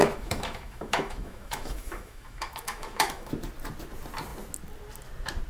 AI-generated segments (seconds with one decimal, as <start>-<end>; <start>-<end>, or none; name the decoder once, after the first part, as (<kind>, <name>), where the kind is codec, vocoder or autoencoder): 0.0-3.3 (autoencoder, DAC-VAE)